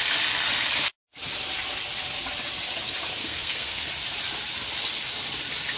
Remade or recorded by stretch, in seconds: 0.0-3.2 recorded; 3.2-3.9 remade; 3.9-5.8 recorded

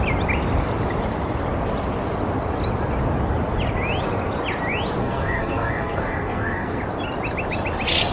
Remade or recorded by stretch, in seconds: 0.0-5.0 recorded; 5.0-6.8 remade; 6.8-8.1 recorded